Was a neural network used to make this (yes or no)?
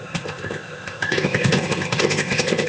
yes